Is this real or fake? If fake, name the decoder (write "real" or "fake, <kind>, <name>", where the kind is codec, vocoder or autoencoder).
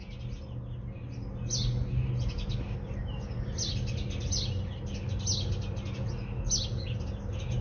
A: real